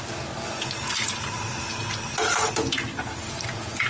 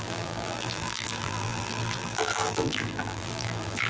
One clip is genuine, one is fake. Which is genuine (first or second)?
first